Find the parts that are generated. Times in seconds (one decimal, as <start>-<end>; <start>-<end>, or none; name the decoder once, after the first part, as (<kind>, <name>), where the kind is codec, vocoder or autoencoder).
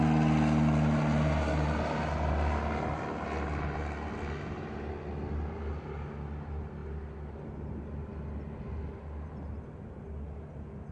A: none